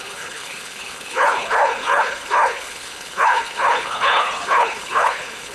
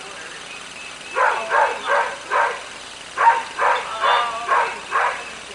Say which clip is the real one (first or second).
second